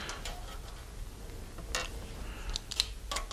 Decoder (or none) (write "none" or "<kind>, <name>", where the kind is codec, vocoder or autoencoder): none